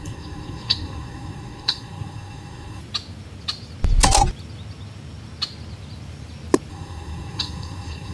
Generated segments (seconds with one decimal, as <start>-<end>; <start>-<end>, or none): 0.0-2.8; 6.7-8.1

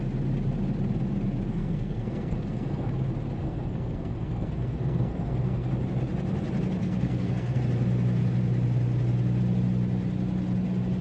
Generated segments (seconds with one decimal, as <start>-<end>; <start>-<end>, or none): 1.5-2.9; 3.4-5.7; 6.8-7.6